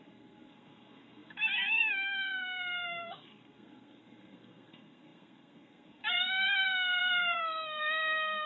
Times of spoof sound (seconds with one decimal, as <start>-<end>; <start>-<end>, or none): 0.0-8.5